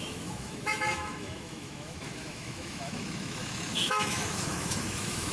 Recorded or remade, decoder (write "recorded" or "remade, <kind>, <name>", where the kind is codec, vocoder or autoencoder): remade, autoencoder, DAC-VAE